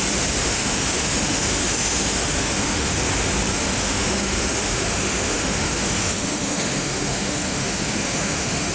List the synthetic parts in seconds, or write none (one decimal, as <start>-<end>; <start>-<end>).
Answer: 0.4-2.9; 3.5-8.7